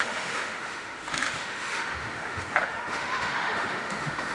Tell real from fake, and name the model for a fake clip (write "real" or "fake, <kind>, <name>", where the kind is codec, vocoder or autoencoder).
fake, autoencoder, DAC-VAE